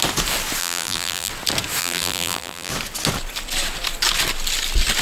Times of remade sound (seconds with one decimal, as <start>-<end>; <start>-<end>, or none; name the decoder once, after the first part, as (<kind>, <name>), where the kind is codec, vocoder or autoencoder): 0.6-1.3 (vocoder, BigVGAN v2); 1.8-2.7